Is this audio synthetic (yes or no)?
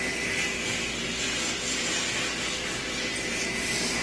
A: no